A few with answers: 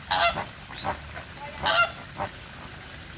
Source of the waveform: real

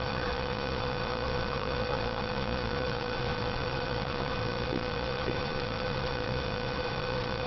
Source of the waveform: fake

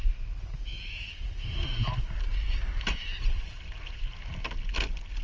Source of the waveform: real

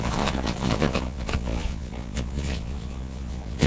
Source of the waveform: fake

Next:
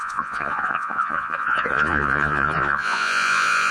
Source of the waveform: fake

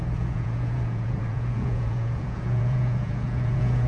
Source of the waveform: fake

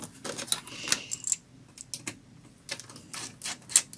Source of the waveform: real